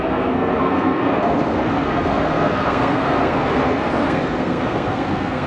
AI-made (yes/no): yes